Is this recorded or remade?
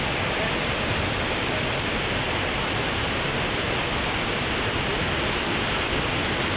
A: recorded